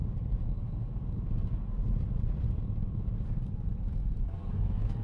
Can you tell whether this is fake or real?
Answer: real